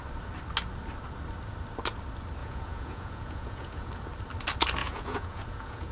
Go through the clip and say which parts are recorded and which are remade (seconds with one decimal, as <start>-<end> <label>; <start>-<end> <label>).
0.0-2.4 recorded; 2.4-3.9 remade; 3.9-4.8 recorded; 4.8-5.9 remade